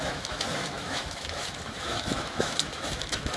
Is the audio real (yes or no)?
no